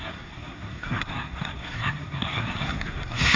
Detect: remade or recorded remade